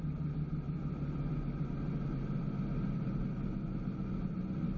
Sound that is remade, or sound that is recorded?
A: recorded